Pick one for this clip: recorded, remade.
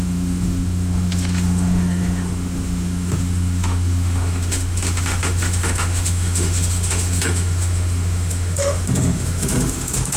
remade